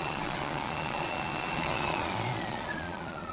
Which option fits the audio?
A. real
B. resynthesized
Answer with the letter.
B